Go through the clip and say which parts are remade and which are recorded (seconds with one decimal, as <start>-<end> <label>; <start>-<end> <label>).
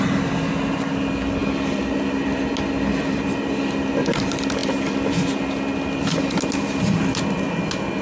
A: 0.0-8.0 recorded